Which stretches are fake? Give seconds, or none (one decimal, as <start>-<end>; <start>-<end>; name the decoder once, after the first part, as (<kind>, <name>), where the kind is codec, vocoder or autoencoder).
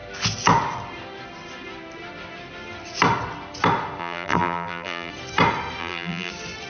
4.0-5.1 (vocoder, BigVGAN v2); 5.8-6.3